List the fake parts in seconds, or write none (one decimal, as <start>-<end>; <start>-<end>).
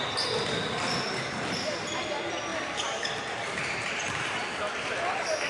2.5-4.4